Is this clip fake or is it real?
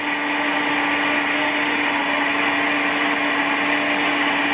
real